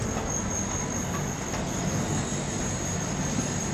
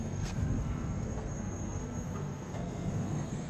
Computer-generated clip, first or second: second